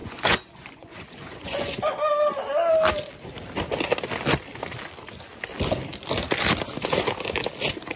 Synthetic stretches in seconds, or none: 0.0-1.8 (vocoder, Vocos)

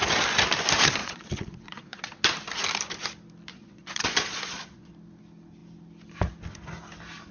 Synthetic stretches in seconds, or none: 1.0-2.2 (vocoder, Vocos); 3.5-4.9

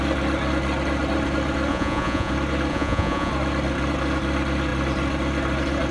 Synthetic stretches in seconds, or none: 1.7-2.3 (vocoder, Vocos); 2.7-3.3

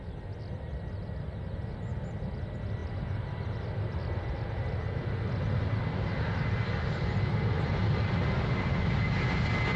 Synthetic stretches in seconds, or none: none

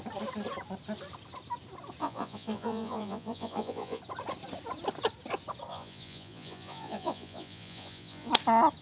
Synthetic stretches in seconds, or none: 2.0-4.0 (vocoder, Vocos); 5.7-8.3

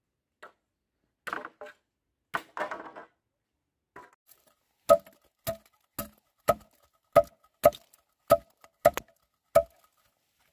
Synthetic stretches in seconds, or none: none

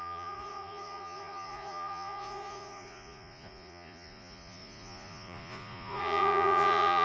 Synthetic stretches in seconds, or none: 0.0-7.0 (vocoder, Vocos)

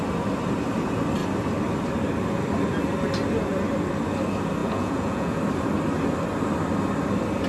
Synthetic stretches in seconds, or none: 4.6-5.4 (vocoder, Vocos)